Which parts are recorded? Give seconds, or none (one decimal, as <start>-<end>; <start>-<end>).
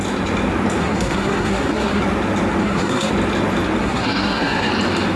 0.0-0.8; 2.0-2.6; 3.1-3.8; 4.7-5.2